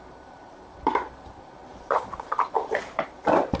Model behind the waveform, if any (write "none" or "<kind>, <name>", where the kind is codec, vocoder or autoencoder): vocoder, BigVGAN v2